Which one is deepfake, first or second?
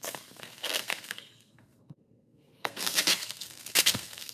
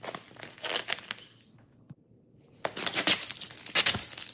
first